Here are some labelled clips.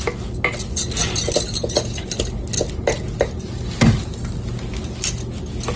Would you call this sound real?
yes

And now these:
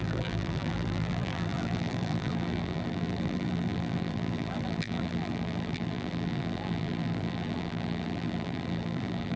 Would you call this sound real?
no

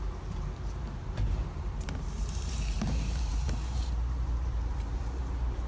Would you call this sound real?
no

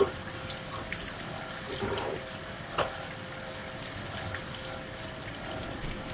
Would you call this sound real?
yes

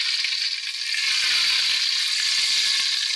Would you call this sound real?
yes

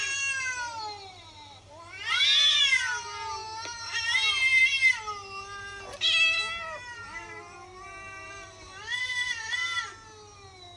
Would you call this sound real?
yes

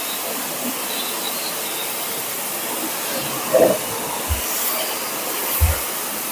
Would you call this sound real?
no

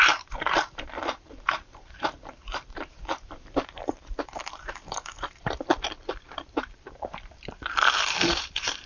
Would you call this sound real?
no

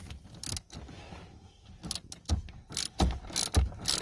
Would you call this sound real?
yes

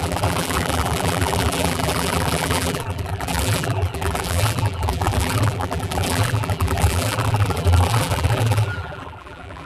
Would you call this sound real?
no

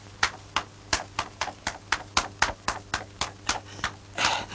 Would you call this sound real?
no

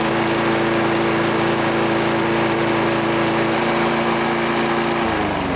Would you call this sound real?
no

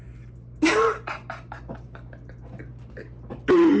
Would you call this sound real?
yes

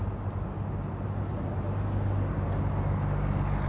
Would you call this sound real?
yes